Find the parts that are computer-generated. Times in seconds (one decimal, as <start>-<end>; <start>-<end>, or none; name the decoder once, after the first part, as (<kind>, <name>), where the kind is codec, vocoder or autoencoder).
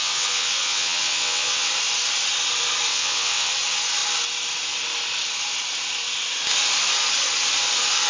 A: 0.0-1.7 (vocoder, WaveNeXt); 2.9-3.5